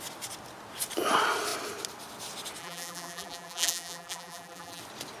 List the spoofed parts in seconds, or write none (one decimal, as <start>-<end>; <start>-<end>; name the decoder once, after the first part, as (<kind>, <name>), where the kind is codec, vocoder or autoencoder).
2.6-4.8 (vocoder, BigVGAN v2)